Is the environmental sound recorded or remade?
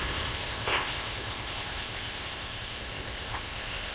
remade